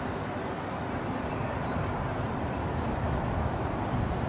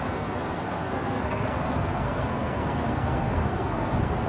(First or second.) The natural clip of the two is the first